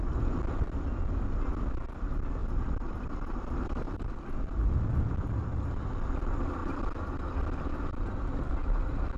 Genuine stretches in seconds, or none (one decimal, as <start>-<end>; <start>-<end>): 0.0-5.4; 6.1-9.2